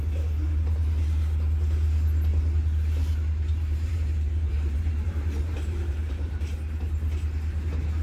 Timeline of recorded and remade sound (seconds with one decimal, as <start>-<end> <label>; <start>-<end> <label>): 0.0-3.5 recorded; 3.5-6.5 remade; 6.5-8.0 recorded